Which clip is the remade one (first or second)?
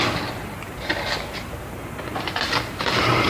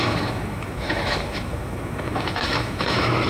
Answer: second